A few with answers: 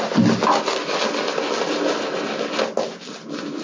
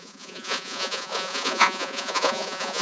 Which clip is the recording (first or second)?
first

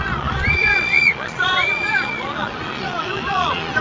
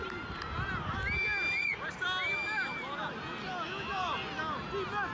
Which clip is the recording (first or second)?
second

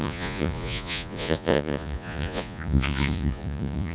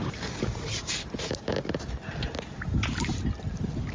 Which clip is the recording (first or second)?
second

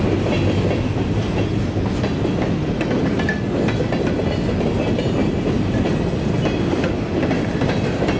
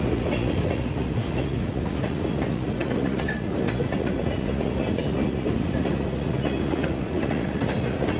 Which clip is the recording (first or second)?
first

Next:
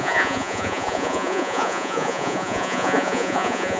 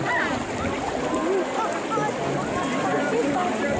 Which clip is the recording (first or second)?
second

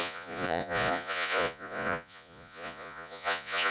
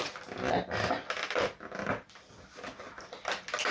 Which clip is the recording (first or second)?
second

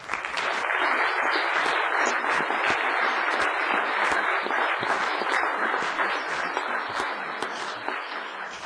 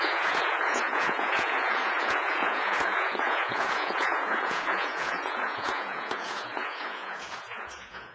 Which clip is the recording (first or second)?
first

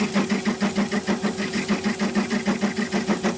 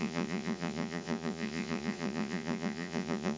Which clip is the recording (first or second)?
first